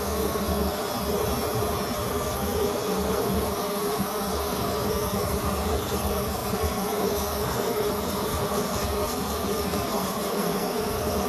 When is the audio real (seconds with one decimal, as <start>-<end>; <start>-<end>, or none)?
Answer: 0.8-2.1